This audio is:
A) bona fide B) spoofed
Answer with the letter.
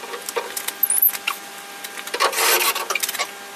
A